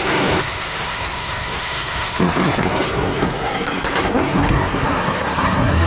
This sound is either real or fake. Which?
fake